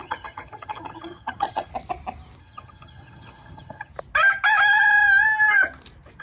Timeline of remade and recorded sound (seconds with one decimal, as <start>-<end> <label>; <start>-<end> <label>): 0.0-1.7 remade; 1.7-2.4 recorded; 2.4-3.9 remade; 3.9-6.2 recorded

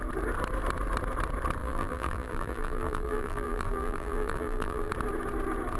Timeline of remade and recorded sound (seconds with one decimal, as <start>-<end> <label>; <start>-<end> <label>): 0.0-1.6 recorded; 1.6-4.9 remade; 4.9-5.8 recorded

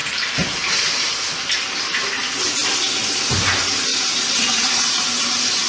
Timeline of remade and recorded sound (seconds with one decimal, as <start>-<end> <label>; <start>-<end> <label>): 0.0-3.9 recorded; 3.9-5.0 remade; 5.0-5.7 recorded